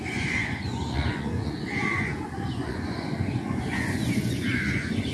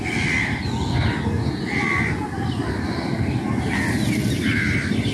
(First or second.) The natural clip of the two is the second